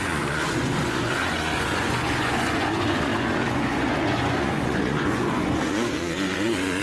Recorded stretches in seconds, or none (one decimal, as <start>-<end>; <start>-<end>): none